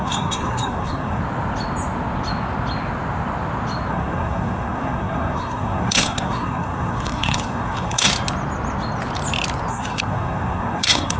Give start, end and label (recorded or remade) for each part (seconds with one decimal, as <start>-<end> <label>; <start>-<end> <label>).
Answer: 0.0-1.2 remade; 1.2-3.9 recorded; 3.9-8.1 remade; 8.1-9.7 recorded; 9.7-11.2 remade